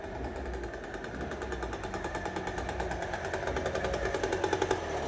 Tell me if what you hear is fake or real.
real